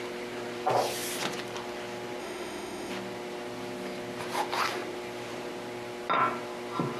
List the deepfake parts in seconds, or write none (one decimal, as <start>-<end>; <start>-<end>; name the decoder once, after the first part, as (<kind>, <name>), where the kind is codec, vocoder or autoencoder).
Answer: 2.2-2.9 (autoencoder, DAC-VAE)